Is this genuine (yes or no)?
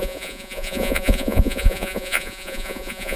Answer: no